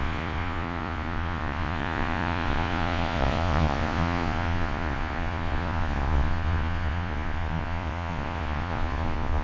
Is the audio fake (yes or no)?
yes